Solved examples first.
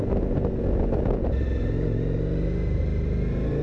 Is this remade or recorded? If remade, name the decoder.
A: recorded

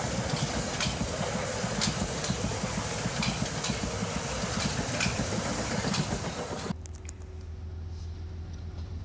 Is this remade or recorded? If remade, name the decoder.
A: recorded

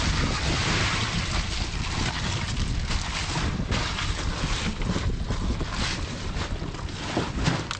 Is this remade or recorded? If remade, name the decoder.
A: recorded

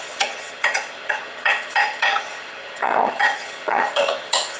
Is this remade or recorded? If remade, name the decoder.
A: remade, vocoder, HiFi-GAN